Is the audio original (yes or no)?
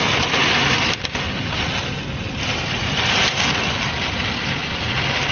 yes